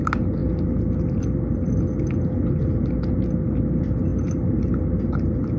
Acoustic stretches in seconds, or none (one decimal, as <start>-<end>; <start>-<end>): 0.0-5.6